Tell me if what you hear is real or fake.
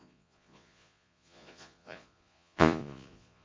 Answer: fake